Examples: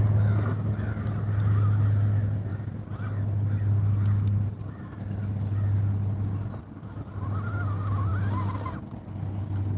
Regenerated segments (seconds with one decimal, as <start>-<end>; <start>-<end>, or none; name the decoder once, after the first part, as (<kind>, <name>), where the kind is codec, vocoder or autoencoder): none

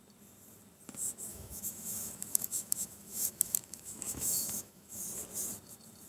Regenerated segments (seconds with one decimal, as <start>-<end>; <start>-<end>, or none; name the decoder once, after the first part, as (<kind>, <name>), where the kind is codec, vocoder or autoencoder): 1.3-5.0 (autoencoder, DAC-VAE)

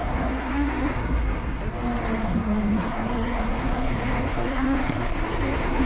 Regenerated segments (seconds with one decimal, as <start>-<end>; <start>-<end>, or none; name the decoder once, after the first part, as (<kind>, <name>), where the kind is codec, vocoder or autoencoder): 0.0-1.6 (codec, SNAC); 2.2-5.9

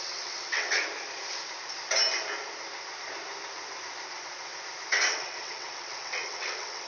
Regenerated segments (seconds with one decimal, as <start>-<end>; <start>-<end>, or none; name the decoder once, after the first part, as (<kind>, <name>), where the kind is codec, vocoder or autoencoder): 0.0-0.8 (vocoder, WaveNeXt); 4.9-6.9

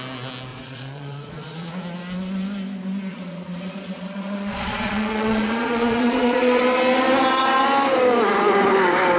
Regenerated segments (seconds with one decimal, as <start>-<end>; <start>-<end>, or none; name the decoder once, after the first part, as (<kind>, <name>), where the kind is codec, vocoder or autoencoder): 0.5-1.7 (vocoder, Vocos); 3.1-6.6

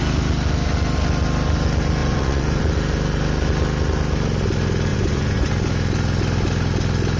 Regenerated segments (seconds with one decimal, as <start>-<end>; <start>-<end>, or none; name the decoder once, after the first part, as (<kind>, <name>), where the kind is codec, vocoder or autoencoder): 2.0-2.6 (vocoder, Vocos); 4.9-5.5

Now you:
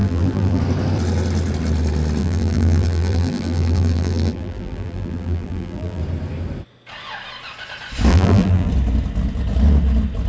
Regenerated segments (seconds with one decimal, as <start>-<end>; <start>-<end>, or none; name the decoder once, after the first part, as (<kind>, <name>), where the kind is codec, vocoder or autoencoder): 0.0-0.6 (vocoder, BigVGAN v2); 2.2-6.0; 8.1-8.7

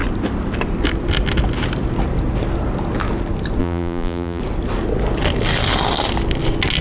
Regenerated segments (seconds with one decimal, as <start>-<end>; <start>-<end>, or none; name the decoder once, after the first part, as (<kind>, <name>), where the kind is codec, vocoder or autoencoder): 3.6-4.4 (vocoder, BigVGAN v2)